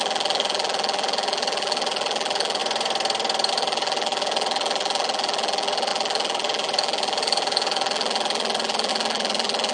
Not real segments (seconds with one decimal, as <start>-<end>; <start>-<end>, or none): 0.0-2.6; 3.5-9.7